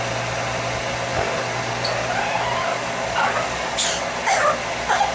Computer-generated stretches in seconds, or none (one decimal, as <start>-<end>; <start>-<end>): 2.7-3.9